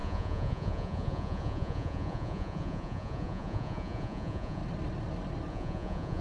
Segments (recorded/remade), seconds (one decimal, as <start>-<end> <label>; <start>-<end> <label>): 0.0-4.6 remade; 4.6-5.5 recorded; 5.5-6.2 remade